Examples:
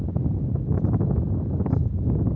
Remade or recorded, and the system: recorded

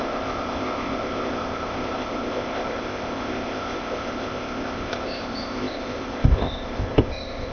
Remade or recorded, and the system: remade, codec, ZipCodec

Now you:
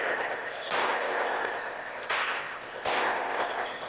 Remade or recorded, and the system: remade, codec, ZipCodec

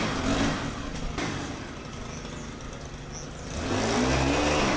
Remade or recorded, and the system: recorded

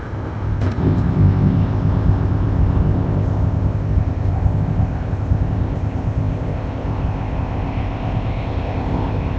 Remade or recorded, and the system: remade, codec, ZipCodec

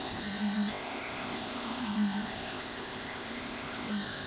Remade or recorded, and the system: remade, codec, ZipCodec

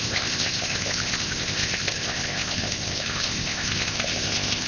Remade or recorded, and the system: remade, codec, ZipCodec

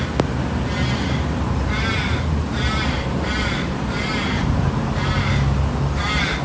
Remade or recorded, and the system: recorded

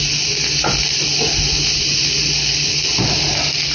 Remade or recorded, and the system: recorded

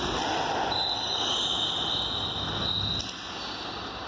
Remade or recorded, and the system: recorded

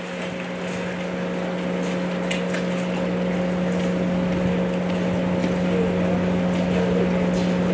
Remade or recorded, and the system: recorded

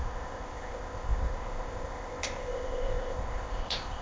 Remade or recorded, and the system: remade, codec, ZipCodec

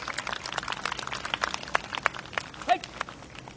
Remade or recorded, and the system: recorded